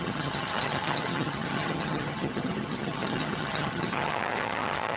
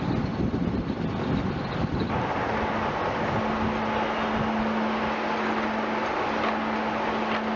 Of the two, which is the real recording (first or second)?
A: second